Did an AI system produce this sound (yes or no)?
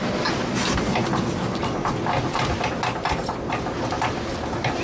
no